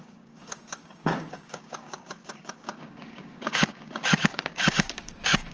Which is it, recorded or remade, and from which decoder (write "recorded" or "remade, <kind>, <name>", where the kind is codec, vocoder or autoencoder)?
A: remade, codec, DAC